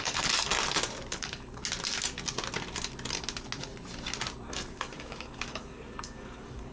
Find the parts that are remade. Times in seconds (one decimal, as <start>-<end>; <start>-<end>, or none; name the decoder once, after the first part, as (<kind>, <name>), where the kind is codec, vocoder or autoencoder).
0.0-0.5 (codec, DAC); 1.1-1.6; 4.5-6.7